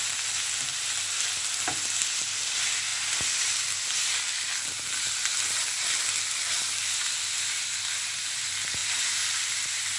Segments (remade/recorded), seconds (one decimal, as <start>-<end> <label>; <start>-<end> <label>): 0.0-10.0 recorded